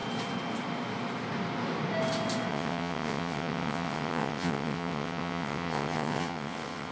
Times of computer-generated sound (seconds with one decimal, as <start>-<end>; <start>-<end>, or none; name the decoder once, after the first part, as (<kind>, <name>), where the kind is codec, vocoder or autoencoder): 2.5-6.9 (vocoder, WaveNeXt)